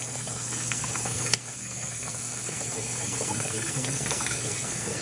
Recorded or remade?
remade